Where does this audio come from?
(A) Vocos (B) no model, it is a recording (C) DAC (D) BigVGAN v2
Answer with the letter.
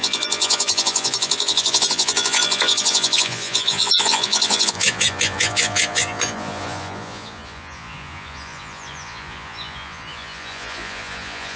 A